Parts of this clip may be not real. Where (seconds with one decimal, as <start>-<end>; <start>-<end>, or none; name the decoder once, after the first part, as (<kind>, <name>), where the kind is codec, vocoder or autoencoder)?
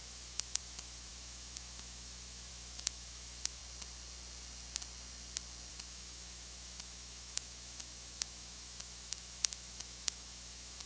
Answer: 0.0-3.6 (autoencoder, DAC-VAE); 5.7-10.9